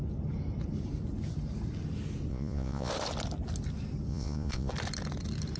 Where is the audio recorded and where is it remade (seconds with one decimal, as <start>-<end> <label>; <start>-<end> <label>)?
0.0-2.3 recorded; 2.3-2.9 remade; 2.9-4.1 recorded; 4.1-4.7 remade; 4.7-5.6 recorded